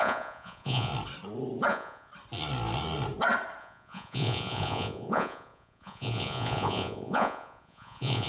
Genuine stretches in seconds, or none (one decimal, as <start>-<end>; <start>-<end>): 0.9-1.7; 2.1-3.6